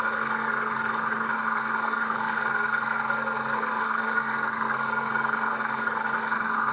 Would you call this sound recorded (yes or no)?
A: no